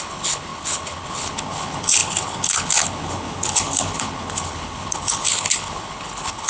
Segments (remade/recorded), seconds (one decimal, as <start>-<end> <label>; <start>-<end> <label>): 0.0-6.5 remade